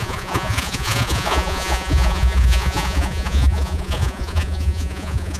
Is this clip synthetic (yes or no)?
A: yes